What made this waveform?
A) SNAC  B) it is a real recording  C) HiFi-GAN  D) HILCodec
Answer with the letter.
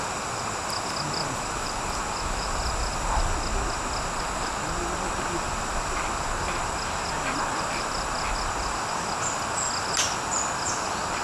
B